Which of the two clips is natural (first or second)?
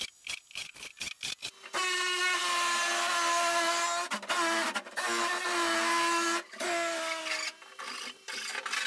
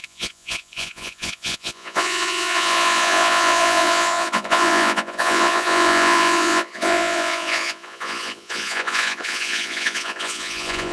first